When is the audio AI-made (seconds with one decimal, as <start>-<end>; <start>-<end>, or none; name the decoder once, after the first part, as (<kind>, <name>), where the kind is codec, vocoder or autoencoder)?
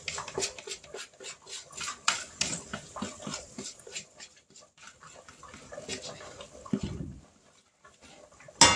none